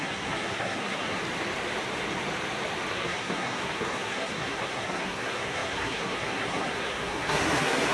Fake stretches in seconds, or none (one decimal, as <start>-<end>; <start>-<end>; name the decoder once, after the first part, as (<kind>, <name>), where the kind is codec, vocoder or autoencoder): 0.0-1.2 (codec, SNAC); 2.9-7.9